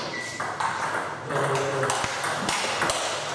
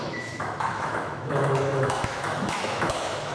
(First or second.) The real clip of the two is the first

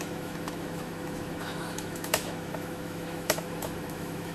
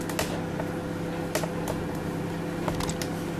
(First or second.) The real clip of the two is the second